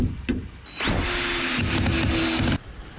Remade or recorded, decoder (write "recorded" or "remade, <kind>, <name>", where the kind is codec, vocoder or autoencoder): recorded